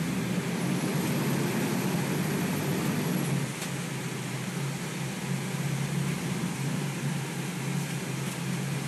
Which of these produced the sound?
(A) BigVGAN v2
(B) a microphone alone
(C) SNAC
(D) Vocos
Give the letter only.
B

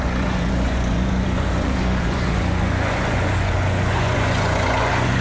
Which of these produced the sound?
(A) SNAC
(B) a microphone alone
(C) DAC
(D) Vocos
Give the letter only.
D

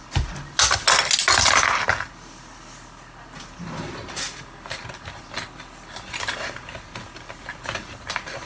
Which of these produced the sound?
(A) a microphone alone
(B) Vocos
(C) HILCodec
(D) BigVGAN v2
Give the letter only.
A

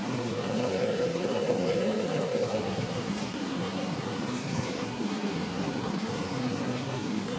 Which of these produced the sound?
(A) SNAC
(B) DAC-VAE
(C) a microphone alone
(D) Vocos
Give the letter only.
A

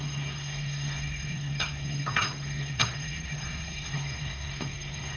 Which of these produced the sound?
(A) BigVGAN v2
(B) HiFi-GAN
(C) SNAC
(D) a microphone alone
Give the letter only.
C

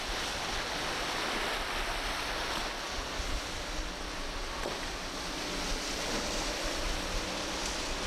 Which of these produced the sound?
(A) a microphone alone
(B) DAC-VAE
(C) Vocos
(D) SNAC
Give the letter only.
A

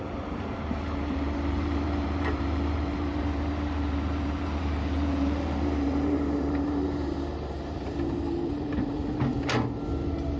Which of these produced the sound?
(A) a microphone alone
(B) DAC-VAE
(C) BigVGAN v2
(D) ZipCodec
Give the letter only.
C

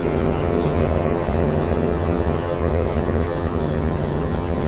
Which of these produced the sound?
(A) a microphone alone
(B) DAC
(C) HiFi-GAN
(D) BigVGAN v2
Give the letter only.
C